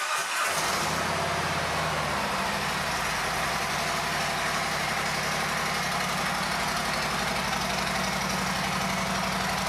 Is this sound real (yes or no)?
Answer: yes